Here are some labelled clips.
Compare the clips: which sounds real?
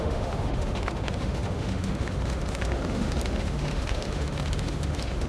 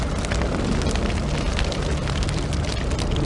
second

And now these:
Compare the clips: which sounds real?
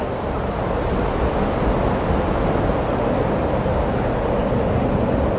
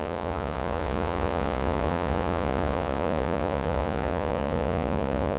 first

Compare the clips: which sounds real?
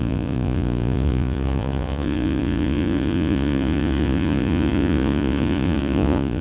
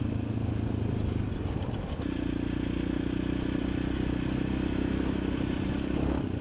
second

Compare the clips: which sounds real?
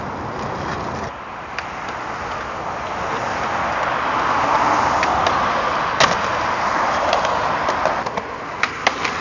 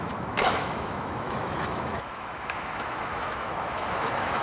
first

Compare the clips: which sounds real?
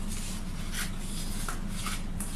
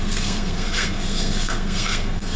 first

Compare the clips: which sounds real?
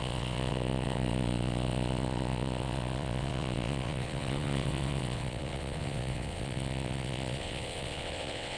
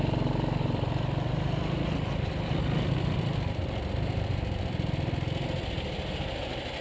second